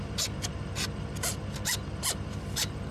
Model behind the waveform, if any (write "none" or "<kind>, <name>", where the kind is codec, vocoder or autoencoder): none